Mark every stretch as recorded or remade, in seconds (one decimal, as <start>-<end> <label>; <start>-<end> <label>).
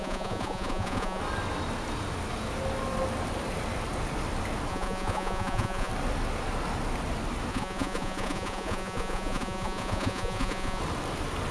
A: 0.0-1.2 remade; 1.2-4.7 recorded; 4.7-5.9 remade; 5.9-7.5 recorded; 7.5-10.8 remade; 10.8-11.5 recorded